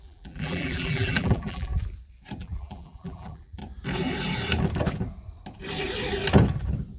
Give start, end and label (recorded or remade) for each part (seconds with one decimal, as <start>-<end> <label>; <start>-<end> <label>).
0.0-1.7 remade; 1.7-2.4 recorded; 2.4-3.6 remade; 3.6-7.0 recorded